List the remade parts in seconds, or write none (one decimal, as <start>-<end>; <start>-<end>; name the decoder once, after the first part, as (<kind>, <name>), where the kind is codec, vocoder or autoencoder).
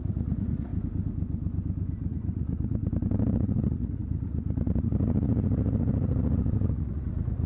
0.0-0.7 (vocoder, Vocos); 2.1-2.8; 3.3-7.5